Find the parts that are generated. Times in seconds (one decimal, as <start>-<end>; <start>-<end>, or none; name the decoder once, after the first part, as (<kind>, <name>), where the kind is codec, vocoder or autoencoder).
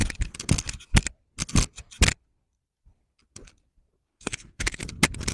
4.1-4.8 (codec, SNAC)